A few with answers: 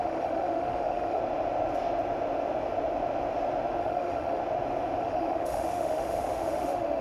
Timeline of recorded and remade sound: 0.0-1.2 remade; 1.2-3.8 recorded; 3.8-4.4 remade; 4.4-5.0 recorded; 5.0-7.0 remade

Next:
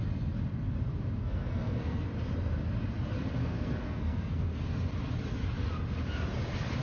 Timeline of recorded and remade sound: 0.0-1.2 recorded; 1.2-2.0 remade; 2.0-3.4 recorded; 3.4-4.6 remade; 4.6-6.8 recorded

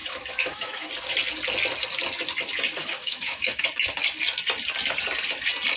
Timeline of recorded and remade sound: 0.0-0.9 remade; 0.9-2.8 recorded; 2.8-3.6 remade; 3.6-5.8 recorded

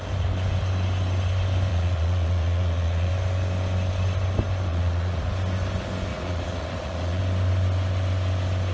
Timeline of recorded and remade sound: 0.0-1.7 recorded; 1.7-3.1 remade; 3.1-4.7 recorded; 4.7-5.3 remade; 5.3-6.1 recorded; 6.1-7.2 remade; 7.2-8.7 recorded

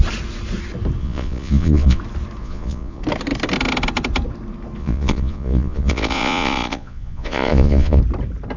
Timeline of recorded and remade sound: 0.0-1.0 recorded; 1.0-2.0 remade; 2.0-2.4 recorded; 2.4-3.0 remade; 3.0-4.8 recorded; 4.8-8.0 remade; 8.0-8.6 recorded

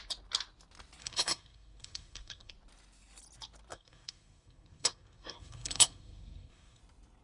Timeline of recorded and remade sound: 0.0-1.0 recorded; 1.0-2.5 remade; 2.5-3.7 recorded; 3.7-6.8 remade; 6.8-7.2 recorded

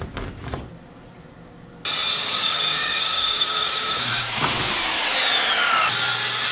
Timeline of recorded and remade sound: 0.0-2.2 recorded; 2.2-4.6 remade; 4.6-6.5 recorded